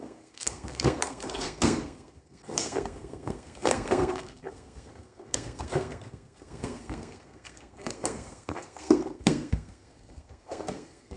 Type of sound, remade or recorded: remade